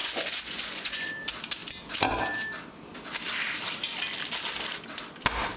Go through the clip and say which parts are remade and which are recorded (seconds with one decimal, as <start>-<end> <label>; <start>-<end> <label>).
0.0-1.1 remade; 1.1-5.6 recorded